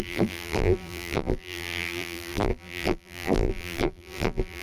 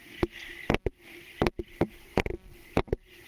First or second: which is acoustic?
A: second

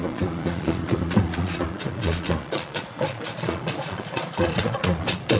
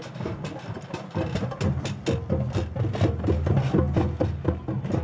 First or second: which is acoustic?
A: second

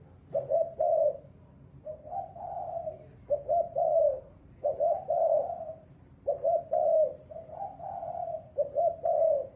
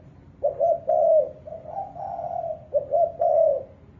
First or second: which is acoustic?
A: second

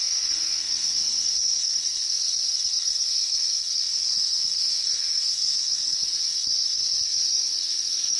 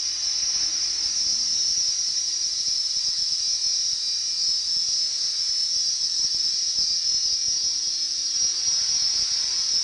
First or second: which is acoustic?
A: second